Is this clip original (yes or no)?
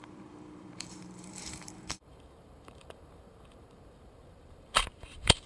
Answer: no